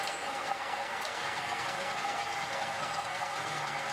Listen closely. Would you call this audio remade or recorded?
remade